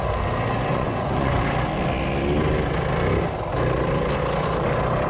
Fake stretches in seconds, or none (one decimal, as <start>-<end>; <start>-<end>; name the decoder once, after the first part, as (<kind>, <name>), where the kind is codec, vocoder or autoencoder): 0.7-1.4 (vocoder, Vocos)